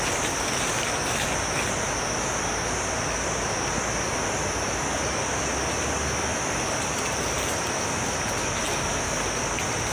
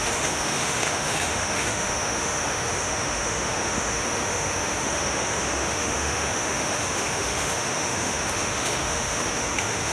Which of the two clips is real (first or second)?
first